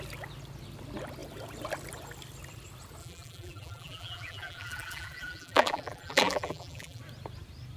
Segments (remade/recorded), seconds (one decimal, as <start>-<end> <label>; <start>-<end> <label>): 0.0-3.0 recorded; 3.0-7.0 remade; 7.0-7.8 recorded